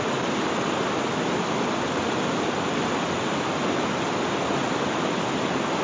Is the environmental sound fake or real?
real